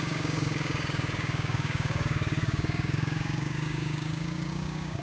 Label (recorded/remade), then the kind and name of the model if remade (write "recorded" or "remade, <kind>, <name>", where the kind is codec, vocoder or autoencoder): remade, codec, DAC